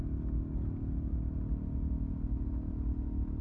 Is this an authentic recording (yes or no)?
yes